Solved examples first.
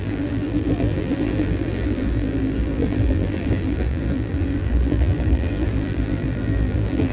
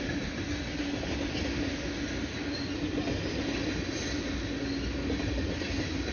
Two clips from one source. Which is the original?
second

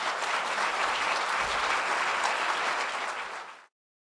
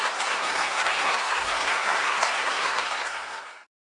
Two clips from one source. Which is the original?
first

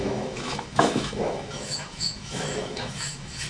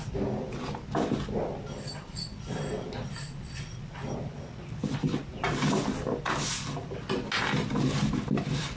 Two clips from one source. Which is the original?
second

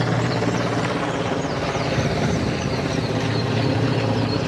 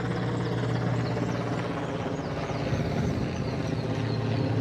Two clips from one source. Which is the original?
second